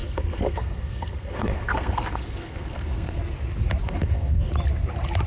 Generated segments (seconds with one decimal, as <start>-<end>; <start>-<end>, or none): 0.0-3.2; 3.8-4.5